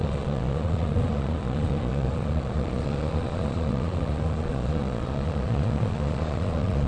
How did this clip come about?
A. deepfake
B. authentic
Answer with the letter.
A